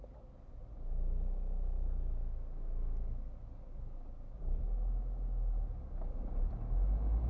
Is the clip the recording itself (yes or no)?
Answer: yes